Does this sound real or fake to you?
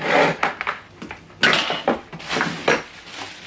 real